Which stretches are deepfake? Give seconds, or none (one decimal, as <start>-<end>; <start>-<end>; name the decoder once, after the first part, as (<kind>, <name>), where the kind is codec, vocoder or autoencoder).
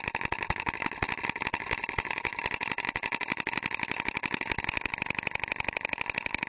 none